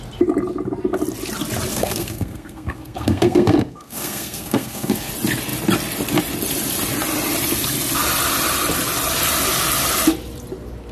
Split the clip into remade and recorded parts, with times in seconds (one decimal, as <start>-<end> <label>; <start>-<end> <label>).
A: 0.0-1.7 recorded; 1.7-5.1 remade; 5.1-10.9 recorded